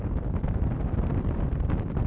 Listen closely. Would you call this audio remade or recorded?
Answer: recorded